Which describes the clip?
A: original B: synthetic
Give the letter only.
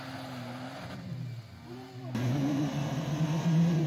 A